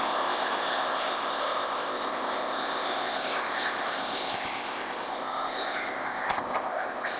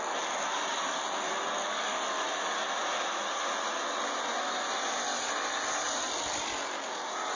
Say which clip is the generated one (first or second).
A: first